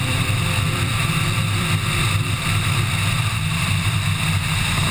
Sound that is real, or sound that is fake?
fake